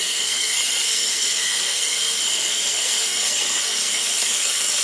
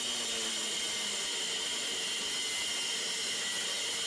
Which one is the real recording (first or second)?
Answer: second